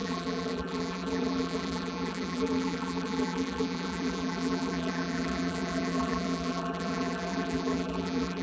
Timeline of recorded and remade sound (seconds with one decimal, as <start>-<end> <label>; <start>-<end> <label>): 0.0-8.4 remade